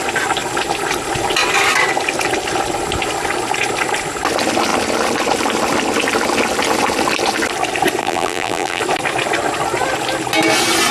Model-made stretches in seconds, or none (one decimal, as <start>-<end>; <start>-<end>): 8.0-8.8